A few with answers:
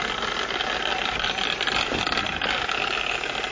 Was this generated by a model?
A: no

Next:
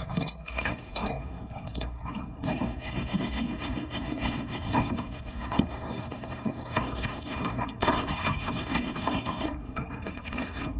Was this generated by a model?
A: yes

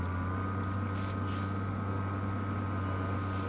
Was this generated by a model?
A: no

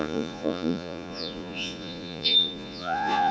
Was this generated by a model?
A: yes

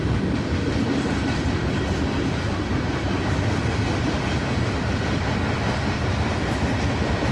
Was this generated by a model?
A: no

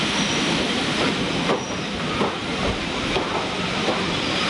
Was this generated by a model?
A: no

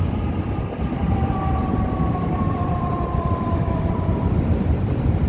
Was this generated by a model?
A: yes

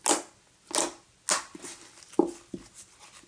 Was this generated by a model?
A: no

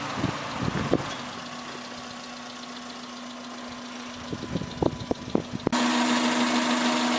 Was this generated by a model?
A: no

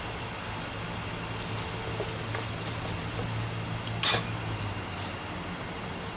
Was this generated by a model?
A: no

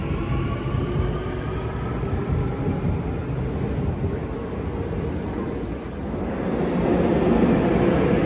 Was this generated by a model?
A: no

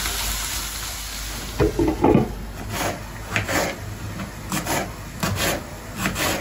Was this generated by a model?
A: no